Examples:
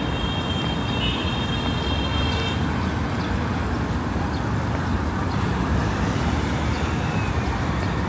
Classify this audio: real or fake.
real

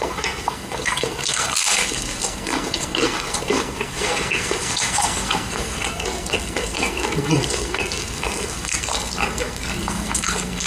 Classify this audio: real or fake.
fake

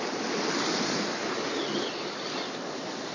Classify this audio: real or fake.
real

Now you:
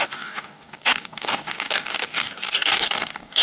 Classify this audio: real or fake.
fake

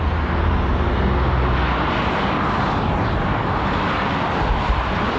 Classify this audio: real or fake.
real